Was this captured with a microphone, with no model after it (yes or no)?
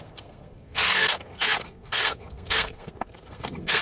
no